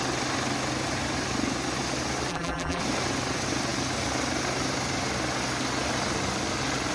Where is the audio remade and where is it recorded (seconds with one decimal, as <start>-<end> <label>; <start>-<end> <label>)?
0.0-2.3 recorded; 2.3-2.8 remade; 2.8-6.9 recorded